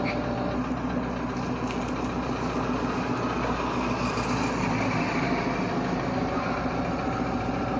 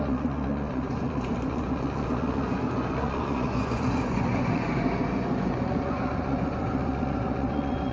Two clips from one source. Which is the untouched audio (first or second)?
first